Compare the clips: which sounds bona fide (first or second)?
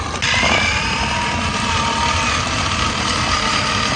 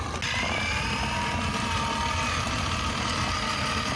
second